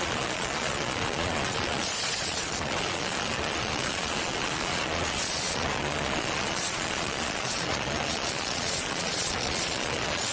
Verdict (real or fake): fake